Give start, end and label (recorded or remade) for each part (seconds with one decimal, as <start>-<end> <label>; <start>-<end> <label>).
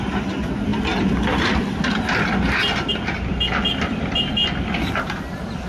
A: 0.0-5.7 recorded